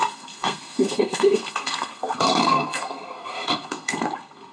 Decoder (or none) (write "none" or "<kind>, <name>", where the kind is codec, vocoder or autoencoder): codec, SNAC